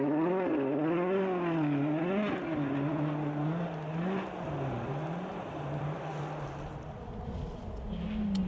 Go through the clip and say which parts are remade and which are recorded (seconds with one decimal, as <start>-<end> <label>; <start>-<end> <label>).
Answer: 0.0-5.3 recorded; 5.3-6.0 remade; 6.0-8.5 recorded